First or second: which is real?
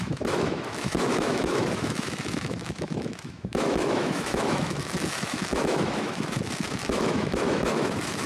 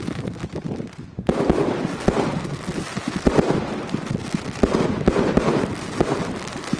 second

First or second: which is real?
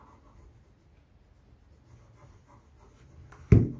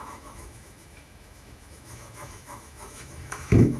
first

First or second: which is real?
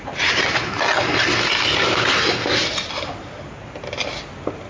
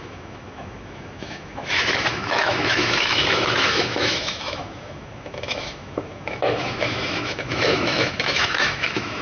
first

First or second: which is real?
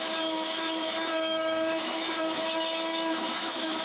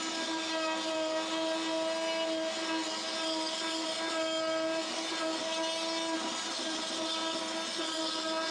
second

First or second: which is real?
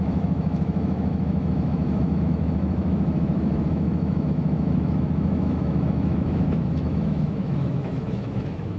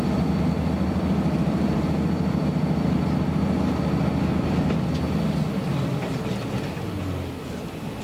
second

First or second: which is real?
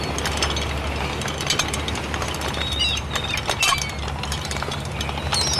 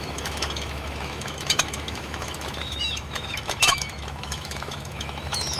first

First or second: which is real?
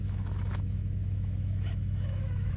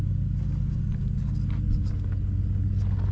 second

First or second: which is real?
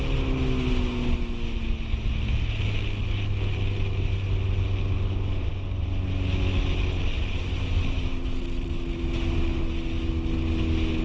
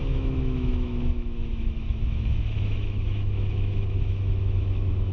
first